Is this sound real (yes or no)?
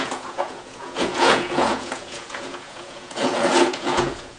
no